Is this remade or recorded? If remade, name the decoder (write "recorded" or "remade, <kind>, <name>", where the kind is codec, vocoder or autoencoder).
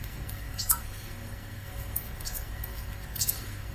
remade, codec, SNAC